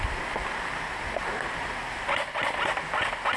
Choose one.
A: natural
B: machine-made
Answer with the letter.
A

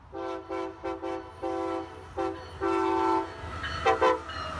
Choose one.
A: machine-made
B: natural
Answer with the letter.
B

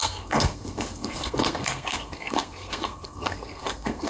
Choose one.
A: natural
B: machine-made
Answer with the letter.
B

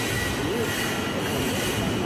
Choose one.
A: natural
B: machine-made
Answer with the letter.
A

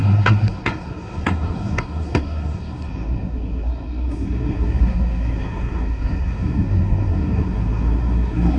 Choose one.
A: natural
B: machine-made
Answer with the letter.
B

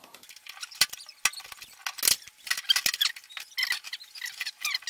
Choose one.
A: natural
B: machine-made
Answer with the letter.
A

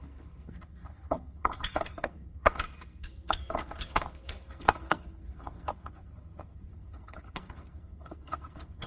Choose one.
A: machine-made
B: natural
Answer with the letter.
A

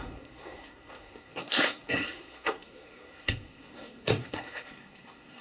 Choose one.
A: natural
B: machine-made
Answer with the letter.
B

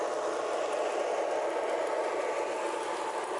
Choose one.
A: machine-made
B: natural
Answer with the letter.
B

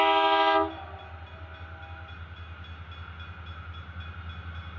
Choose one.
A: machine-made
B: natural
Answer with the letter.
B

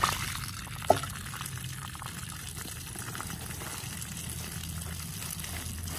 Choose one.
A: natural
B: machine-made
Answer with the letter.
A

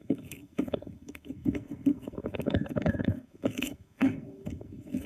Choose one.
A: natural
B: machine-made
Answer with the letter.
B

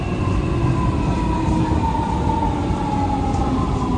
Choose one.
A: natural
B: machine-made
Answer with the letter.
A